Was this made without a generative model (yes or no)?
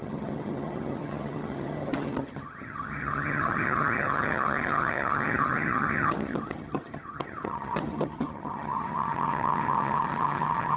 no